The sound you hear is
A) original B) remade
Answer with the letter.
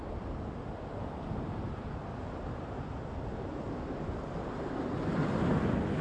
A